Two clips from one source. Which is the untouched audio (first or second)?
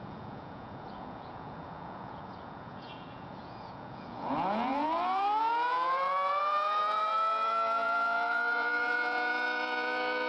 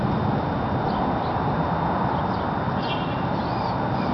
second